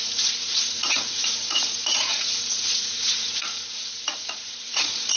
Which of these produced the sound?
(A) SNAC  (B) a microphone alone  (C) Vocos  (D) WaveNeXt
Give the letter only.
C